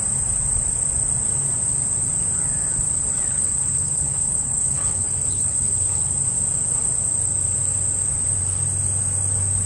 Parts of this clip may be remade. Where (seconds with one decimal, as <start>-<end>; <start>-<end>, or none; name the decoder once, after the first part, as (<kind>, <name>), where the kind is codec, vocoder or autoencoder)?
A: 3.3-6.1 (codec, HILCodec)